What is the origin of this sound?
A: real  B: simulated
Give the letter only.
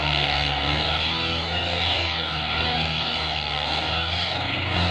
B